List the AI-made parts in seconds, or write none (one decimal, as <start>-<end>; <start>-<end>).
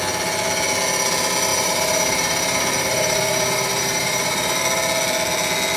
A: 1.5-4.6